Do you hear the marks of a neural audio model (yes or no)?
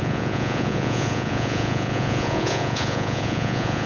yes